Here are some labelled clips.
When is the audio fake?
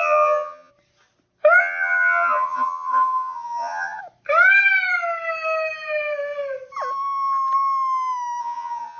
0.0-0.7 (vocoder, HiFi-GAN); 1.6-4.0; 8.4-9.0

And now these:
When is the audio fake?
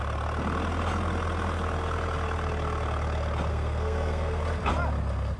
3.5-4.4 (codec, SNAC)